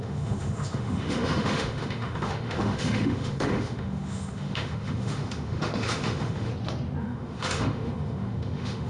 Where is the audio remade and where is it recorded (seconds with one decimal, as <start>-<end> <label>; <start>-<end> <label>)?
0.0-6.5 remade; 6.5-7.0 recorded; 7.0-8.9 remade